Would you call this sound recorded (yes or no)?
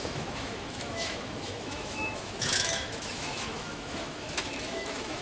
no